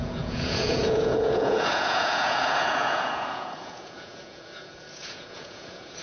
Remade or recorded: remade